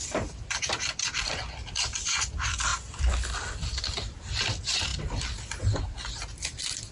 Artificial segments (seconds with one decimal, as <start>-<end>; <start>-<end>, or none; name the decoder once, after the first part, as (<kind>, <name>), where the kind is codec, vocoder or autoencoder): 0.0-2.7 (vocoder, BigVGAN v2); 3.8-6.9